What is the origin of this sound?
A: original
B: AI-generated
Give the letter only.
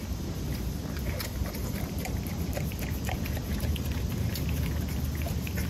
A